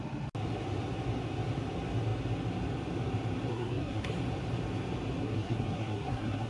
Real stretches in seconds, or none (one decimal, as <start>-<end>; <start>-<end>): 0.0-3.5; 4.1-5.2